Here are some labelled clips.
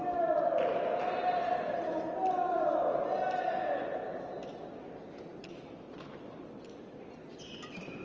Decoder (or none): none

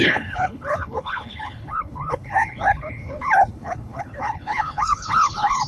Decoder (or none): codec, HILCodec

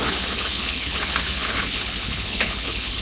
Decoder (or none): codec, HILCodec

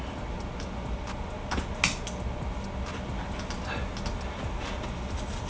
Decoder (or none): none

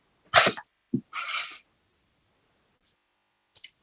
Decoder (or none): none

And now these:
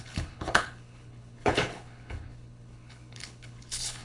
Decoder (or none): codec, HILCodec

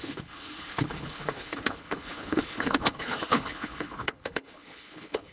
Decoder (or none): codec, HILCodec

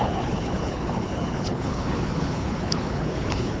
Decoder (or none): codec, HILCodec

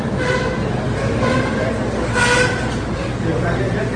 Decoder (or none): none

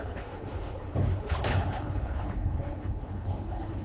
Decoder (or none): codec, HILCodec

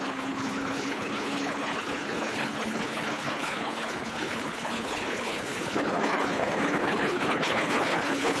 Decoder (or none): codec, HILCodec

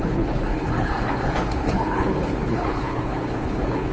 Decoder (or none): codec, HILCodec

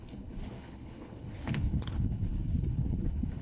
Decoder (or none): codec, HILCodec